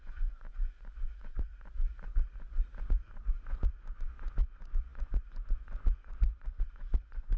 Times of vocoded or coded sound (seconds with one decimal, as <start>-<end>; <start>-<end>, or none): 0.0-1.5; 3.3-7.4